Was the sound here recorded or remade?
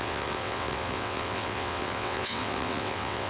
remade